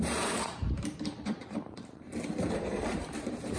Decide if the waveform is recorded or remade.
remade